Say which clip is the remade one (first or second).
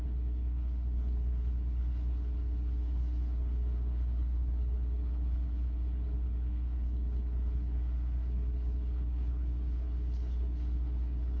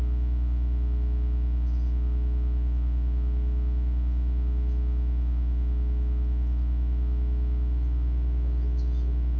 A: first